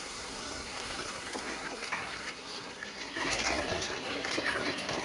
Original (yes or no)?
no